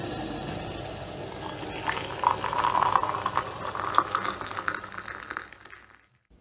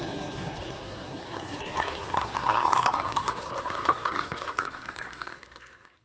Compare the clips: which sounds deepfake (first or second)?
second